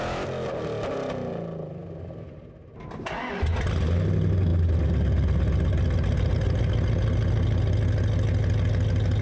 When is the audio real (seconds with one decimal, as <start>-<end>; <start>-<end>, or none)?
0.0-9.2